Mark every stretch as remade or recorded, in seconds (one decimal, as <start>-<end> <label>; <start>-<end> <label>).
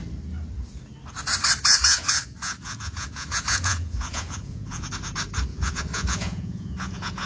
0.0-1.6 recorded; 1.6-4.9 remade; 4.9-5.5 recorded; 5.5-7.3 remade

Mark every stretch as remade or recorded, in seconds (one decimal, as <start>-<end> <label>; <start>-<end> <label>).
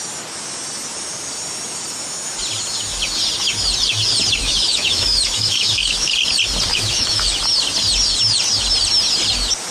0.0-4.4 recorded; 4.4-6.1 remade; 6.1-6.7 recorded; 6.7-7.4 remade; 7.4-9.7 recorded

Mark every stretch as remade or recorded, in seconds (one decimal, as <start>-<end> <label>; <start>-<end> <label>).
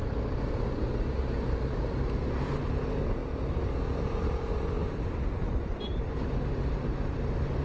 0.0-2.6 remade; 2.6-4.8 recorded; 4.8-6.3 remade; 6.3-7.6 recorded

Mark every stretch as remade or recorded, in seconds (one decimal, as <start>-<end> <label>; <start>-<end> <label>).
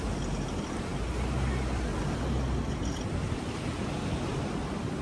0.0-5.0 recorded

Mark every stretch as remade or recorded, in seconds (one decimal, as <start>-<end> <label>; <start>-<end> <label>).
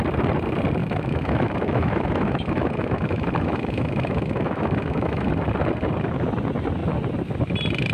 0.0-0.8 recorded; 0.8-5.3 remade; 5.3-7.9 recorded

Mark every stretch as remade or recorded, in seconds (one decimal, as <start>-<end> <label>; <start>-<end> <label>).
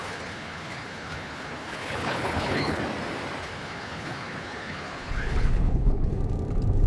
0.0-2.8 remade; 2.8-3.4 recorded; 3.4-6.2 remade; 6.2-6.9 recorded